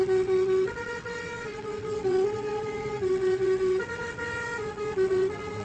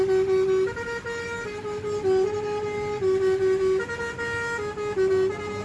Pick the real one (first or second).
second